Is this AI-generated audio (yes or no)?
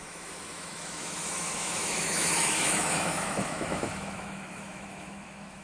yes